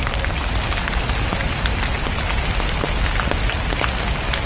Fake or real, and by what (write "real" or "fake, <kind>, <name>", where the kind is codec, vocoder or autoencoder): real